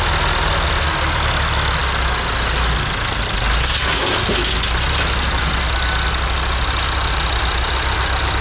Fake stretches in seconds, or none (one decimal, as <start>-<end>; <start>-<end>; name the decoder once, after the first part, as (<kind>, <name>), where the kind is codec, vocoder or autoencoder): none